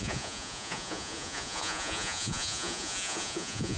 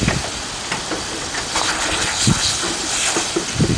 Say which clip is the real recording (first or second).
second